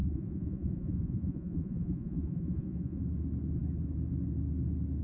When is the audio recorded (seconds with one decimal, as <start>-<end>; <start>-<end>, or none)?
3.0-5.0